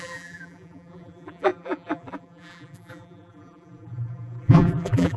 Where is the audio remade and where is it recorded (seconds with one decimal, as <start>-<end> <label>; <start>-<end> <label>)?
0.0-5.2 remade